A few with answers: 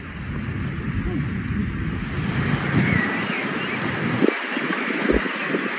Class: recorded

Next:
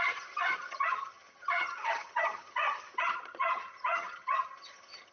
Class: remade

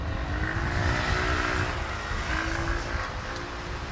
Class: recorded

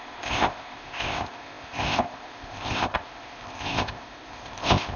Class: remade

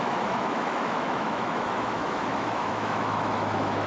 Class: remade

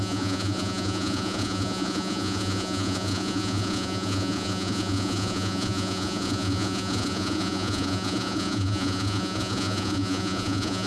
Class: remade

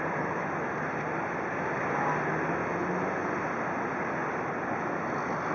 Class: recorded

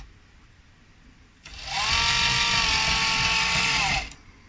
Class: recorded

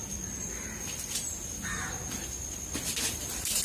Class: recorded